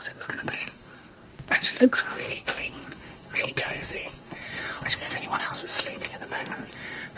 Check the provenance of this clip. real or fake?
fake